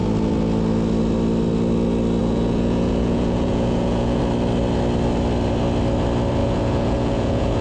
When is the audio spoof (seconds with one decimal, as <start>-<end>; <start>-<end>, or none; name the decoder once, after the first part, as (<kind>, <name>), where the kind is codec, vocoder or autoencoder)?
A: 2.2-4.2 (vocoder, Vocos); 6.4-7.6